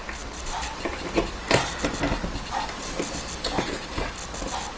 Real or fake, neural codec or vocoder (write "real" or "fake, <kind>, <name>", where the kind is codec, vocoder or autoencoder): real